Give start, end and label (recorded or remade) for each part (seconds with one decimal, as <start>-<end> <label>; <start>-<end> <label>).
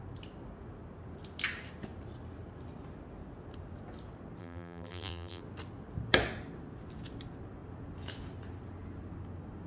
0.0-4.4 recorded; 4.4-5.4 remade; 5.4-9.7 recorded